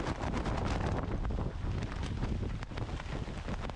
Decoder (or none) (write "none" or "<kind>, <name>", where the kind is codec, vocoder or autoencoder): none